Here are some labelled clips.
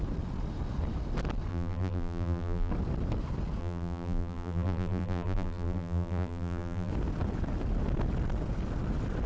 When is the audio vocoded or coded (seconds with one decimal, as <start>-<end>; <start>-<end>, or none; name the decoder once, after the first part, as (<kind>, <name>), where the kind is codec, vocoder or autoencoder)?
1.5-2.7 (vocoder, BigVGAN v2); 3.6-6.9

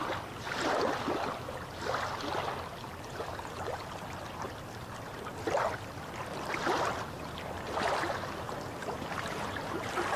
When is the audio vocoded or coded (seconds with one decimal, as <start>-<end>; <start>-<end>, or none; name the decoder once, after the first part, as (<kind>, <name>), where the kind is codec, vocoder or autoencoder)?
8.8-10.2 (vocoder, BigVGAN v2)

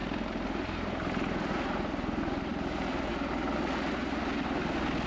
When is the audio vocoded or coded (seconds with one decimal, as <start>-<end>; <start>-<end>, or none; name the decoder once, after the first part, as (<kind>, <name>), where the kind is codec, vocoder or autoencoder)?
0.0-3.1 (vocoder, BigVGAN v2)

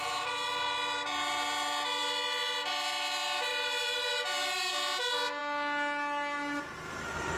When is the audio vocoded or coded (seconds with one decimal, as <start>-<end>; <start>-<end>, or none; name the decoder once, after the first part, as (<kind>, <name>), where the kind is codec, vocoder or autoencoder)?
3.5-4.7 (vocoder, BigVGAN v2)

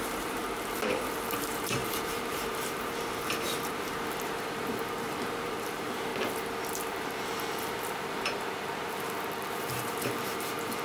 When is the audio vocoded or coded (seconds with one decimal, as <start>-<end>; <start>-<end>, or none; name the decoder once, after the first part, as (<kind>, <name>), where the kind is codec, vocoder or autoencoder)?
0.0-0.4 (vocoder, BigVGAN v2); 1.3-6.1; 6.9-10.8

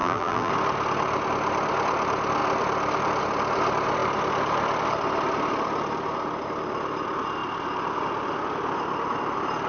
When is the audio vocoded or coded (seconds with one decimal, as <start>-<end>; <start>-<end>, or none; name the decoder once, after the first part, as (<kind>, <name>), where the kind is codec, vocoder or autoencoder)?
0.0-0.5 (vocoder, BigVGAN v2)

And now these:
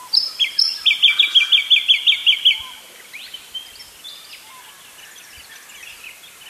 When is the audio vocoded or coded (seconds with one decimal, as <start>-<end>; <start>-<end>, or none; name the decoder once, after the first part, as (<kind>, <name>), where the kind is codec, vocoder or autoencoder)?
0.0-1.2 (vocoder, BigVGAN v2); 2.2-3.3